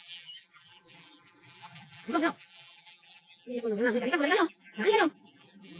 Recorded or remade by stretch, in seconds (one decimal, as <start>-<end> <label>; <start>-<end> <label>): 0.0-5.8 remade